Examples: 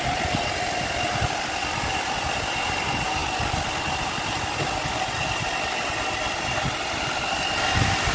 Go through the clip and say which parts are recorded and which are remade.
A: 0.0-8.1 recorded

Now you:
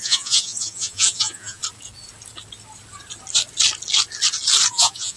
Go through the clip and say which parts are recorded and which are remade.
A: 0.0-1.6 remade; 1.6-4.7 recorded; 4.7-5.2 remade

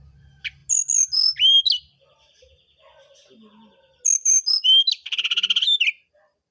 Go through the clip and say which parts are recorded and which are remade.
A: 0.0-6.5 recorded